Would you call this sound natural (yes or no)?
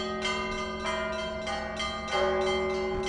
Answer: yes